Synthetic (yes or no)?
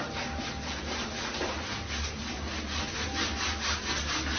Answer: no